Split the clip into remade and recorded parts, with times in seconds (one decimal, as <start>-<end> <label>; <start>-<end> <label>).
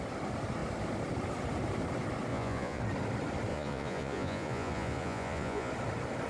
0.0-2.3 recorded; 2.3-2.8 remade; 2.8-3.5 recorded; 3.5-5.7 remade; 5.7-6.3 recorded